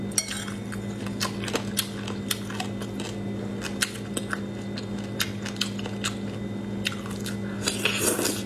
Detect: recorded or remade recorded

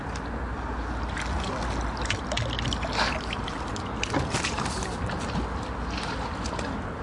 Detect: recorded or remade recorded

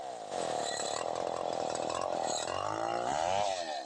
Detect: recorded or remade recorded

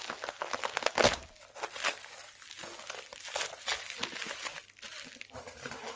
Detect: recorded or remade recorded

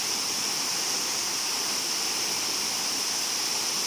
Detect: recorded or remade remade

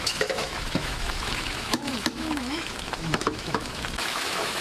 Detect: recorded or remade remade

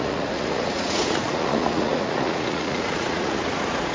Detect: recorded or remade remade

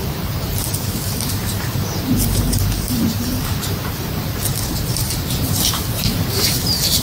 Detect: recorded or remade remade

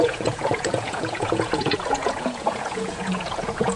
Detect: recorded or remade remade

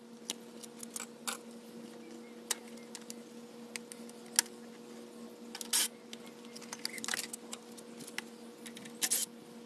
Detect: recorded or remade recorded